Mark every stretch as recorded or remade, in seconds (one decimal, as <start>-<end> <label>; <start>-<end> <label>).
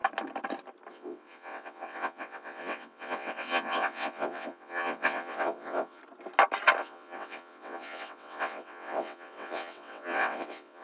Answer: 0.0-0.9 recorded; 0.9-6.0 remade; 6.0-6.8 recorded; 6.8-10.8 remade